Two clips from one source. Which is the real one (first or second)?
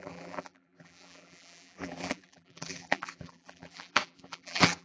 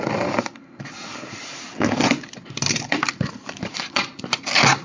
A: second